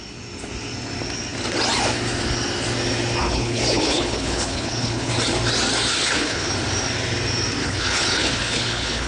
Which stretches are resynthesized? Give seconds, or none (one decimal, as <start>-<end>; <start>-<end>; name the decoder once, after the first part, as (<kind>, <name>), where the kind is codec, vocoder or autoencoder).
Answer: 3.2-5.1 (codec, HILCodec); 6.0-6.5; 7.6-9.1